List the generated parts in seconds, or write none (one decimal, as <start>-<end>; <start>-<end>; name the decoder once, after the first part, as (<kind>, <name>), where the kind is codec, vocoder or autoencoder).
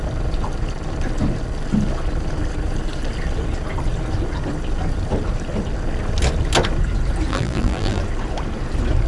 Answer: 7.3-8.0 (vocoder, BigVGAN v2)